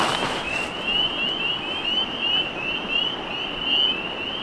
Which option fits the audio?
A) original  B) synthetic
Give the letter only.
A